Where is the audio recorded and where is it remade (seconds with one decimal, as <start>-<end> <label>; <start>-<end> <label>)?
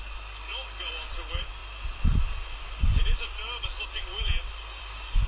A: 0.0-5.3 recorded